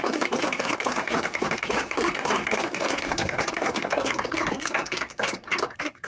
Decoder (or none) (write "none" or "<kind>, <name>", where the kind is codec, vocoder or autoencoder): codec, SNAC